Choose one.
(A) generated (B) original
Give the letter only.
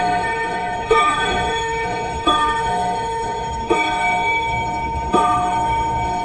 A